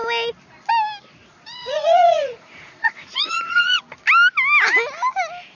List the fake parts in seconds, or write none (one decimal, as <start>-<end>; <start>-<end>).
1.2-3.8

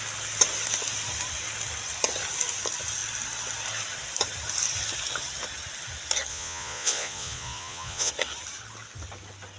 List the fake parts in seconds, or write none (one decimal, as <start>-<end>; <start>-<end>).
6.3-8.1

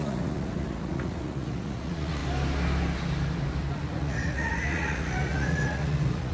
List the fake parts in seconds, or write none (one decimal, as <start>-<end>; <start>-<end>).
0.0-2.2; 3.7-6.3

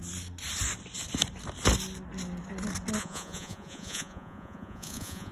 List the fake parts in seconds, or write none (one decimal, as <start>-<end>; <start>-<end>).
3.0-5.3

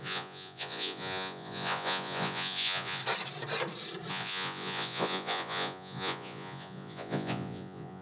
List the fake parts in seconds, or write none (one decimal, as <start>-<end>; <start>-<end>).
0.0-3.0; 4.1-8.0